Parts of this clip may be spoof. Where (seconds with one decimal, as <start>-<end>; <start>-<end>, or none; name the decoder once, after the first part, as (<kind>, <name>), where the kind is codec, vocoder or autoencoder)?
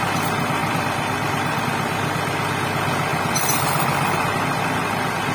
0.6-1.6 (vocoder, BigVGAN v2); 3.1-4.2